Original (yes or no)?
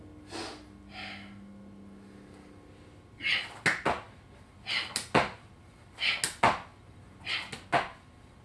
yes